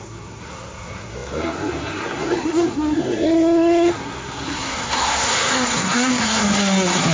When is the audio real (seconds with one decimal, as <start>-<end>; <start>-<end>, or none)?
none

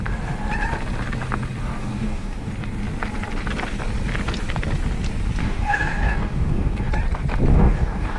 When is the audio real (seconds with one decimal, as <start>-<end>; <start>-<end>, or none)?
0.0-1.8; 2.5-5.4; 6.9-7.5

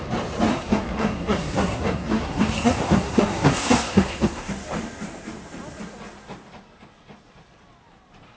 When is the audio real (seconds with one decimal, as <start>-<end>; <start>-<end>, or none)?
0.0-0.5; 4.5-8.4